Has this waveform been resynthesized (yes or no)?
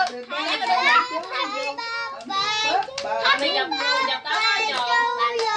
no